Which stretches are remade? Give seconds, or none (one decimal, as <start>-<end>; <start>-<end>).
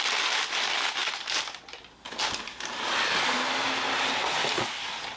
none